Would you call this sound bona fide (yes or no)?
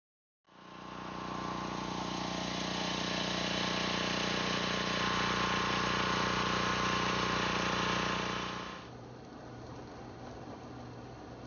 yes